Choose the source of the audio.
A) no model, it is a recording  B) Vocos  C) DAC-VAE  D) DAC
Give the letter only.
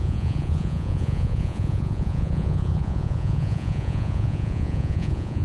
B